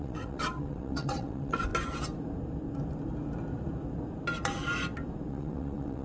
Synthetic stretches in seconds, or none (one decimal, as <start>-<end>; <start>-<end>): 0.0-1.7; 5.3-6.0